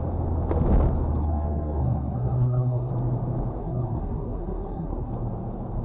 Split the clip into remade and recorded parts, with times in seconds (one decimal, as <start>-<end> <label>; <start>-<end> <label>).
0.0-1.2 recorded; 1.2-2.9 remade; 2.9-3.6 recorded; 3.6-5.1 remade; 5.1-5.8 recorded